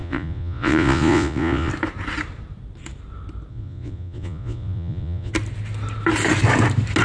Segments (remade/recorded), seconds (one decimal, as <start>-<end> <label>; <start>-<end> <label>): 0.0-1.7 remade; 1.7-3.5 recorded; 3.5-5.3 remade; 5.3-7.0 recorded